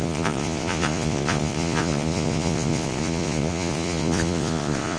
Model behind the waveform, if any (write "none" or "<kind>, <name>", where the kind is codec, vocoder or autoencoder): vocoder, Vocos